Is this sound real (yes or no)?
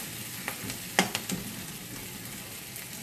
yes